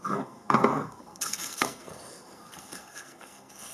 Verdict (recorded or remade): remade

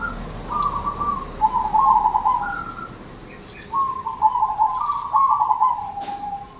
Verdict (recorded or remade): recorded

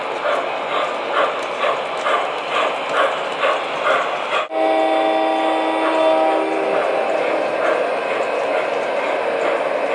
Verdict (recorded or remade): recorded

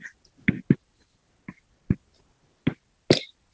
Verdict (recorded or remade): recorded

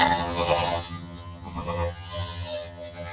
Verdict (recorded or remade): remade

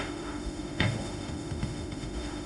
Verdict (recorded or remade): remade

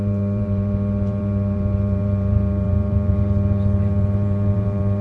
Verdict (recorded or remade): remade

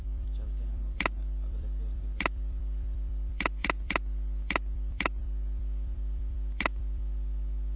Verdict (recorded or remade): remade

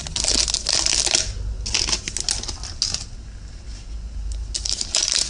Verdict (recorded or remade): recorded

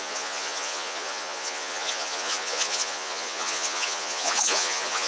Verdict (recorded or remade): remade